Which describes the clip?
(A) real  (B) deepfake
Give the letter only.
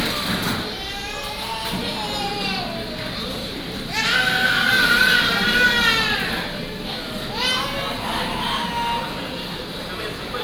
A